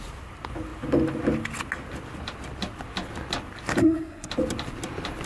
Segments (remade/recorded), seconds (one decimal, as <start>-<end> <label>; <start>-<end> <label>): 0.0-3.8 recorded; 3.8-4.3 remade; 4.3-5.3 recorded